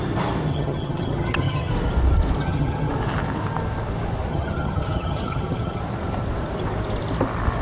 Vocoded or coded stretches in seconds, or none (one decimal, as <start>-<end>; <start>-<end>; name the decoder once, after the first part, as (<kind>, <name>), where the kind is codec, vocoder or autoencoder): 0.5-1.7 (vocoder, HiFi-GAN); 2.4-2.9; 4.3-5.8